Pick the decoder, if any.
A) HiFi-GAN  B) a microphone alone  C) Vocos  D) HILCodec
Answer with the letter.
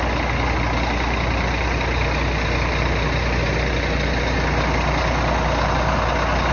B